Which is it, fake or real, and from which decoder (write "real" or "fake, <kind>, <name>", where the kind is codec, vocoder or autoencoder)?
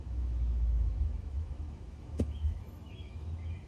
fake, autoencoder, DAC-VAE